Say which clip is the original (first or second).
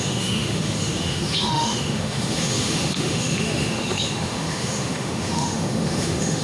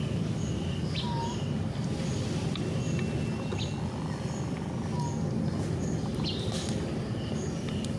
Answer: second